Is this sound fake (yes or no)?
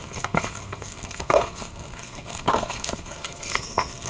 yes